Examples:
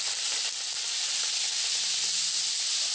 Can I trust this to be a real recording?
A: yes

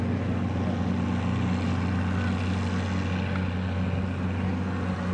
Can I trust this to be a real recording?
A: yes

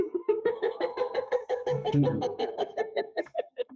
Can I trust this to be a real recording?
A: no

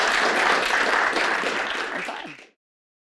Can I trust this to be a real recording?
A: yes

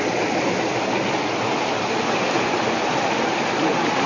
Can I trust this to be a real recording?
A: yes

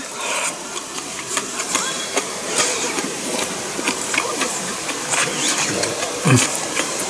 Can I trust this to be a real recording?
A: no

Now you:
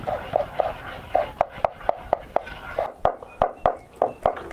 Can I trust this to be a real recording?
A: yes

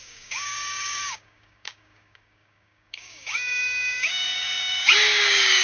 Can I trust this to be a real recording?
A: no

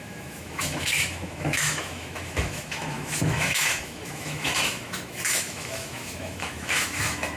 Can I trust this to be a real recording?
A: no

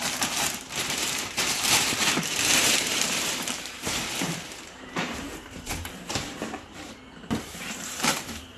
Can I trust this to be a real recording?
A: no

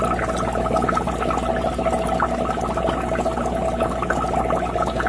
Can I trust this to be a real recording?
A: yes